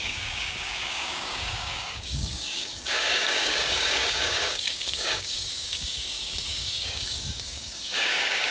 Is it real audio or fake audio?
fake